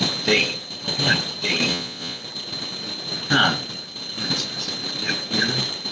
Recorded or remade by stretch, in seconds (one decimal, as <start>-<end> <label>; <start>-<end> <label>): 0.0-1.7 recorded; 1.7-2.2 remade; 2.2-5.9 recorded